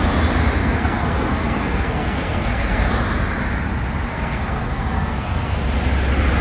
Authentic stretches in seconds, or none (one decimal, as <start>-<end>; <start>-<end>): 0.0-0.6; 2.9-4.1; 5.6-6.4